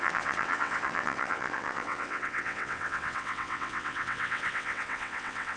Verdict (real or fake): fake